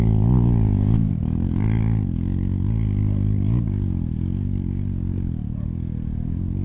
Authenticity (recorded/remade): recorded